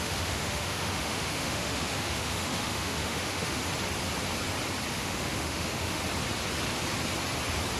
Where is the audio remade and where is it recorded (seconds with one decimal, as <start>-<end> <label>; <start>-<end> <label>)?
0.0-3.6 remade; 3.6-4.9 recorded; 4.9-6.0 remade; 6.0-7.8 recorded